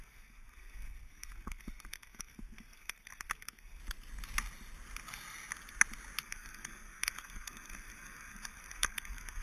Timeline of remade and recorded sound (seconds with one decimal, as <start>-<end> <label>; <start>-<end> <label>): 0.0-3.8 remade; 3.8-6.2 recorded; 6.2-9.4 remade